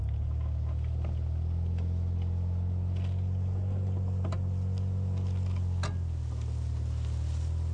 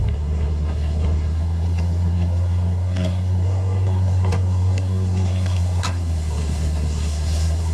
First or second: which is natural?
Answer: first